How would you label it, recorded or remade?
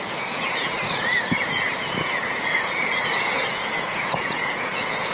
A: remade